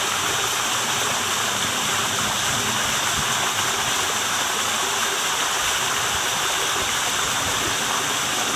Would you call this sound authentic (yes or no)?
yes